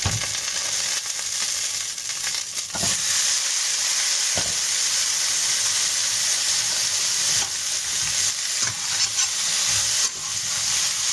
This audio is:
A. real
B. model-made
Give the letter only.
A